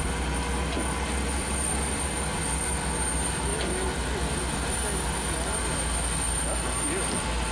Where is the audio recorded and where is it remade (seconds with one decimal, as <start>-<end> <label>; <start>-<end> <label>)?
0.0-7.5 recorded